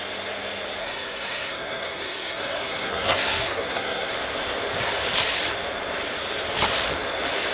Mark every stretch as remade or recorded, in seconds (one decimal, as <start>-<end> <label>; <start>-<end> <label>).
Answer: 0.0-0.8 recorded; 0.8-4.1 remade; 4.1-7.5 recorded